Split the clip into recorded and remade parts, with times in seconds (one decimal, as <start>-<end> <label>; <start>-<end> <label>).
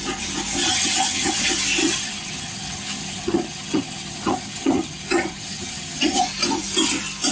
0.0-0.6 recorded; 0.6-1.4 remade; 1.4-1.8 recorded; 1.8-6.2 remade; 6.2-7.3 recorded